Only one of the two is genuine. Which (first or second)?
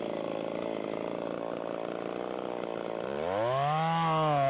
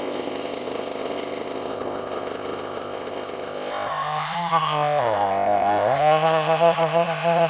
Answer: first